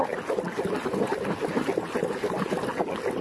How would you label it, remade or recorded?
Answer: recorded